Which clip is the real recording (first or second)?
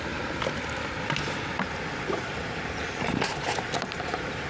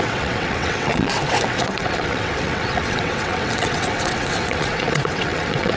first